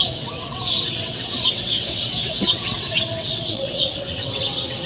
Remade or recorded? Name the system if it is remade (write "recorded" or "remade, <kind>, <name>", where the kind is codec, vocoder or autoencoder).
remade, vocoder, WaveNeXt